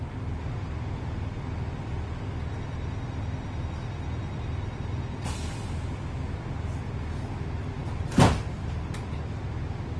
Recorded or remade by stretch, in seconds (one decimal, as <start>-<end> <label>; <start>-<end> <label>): 0.0-7.8 recorded; 7.8-9.2 remade; 9.2-10.0 recorded